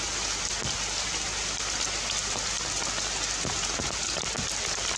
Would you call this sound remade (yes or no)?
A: no